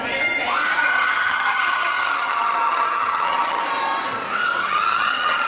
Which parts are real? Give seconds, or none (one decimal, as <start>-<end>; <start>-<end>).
0.0-0.8; 3.6-4.6